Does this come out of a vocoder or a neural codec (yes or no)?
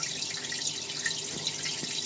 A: no